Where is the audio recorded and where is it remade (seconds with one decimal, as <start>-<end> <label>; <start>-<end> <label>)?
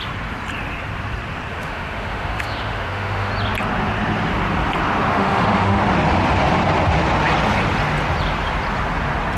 0.0-1.5 recorded; 1.5-3.3 remade; 3.3-5.1 recorded; 5.1-5.8 remade; 5.8-9.4 recorded